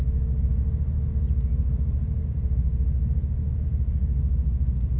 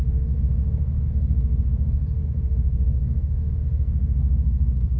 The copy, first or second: second